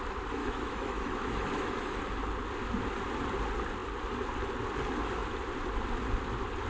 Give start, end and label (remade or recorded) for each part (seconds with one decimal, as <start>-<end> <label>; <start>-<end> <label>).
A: 0.0-0.4 recorded; 0.4-2.0 remade; 2.0-6.7 recorded